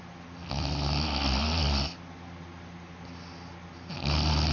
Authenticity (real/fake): real